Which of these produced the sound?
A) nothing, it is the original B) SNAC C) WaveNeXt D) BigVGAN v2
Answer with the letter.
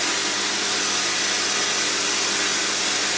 A